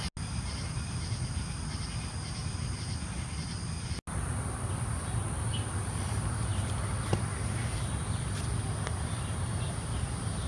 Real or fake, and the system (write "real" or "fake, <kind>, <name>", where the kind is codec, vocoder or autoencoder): real